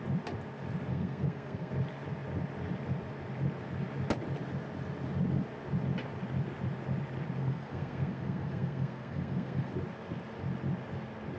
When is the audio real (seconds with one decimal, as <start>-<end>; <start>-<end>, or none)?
0.0-0.9; 1.7-7.4; 9.7-11.4

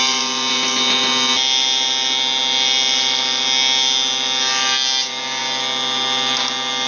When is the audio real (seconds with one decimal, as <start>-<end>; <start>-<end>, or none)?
0.0-6.9

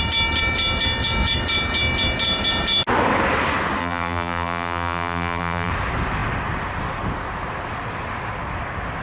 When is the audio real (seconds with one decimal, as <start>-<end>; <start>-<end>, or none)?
0.0-3.8; 5.7-9.0